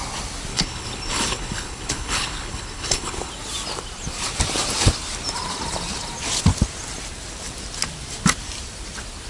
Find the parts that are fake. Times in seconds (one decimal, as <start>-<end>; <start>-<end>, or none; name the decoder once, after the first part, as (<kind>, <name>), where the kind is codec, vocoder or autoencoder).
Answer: 0.5-3.3 (codec, HILCodec)

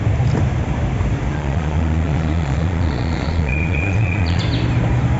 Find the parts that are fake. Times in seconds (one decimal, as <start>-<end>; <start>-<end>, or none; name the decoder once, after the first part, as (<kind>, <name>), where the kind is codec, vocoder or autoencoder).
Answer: 1.3-4.4 (vocoder, Vocos)

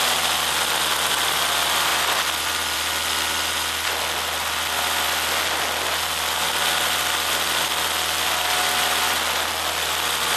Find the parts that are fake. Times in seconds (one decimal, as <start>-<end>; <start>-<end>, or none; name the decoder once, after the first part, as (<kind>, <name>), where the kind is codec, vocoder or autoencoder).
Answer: 1.9-2.9 (vocoder, BigVGAN v2)

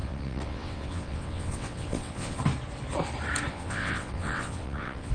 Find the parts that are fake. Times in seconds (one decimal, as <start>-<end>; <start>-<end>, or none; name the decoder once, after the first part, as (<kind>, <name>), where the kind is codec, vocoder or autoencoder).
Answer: 0.0-2.4 (vocoder, WaveNeXt); 3.5-5.1